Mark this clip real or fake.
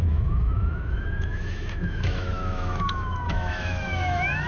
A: fake